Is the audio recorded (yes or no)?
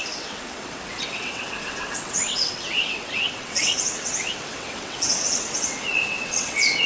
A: no